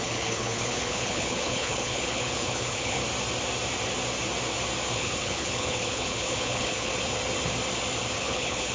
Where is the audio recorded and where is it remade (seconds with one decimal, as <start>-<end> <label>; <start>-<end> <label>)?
0.0-3.0 remade; 3.0-4.9 recorded; 4.9-6.9 remade; 6.9-8.2 recorded; 8.2-8.7 remade